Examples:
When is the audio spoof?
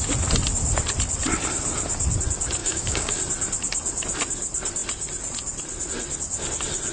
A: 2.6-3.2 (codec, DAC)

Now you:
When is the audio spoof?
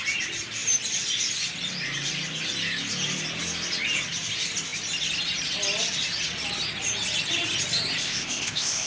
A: 8.0-8.9 (codec, ZipCodec)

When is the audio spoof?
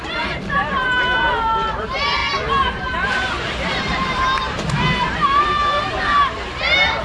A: 0.0-7.0 (vocoder, BigVGAN v2)